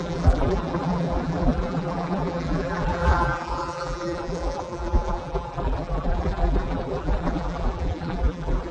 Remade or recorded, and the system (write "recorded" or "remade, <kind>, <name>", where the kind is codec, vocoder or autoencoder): remade, vocoder, BigVGAN v2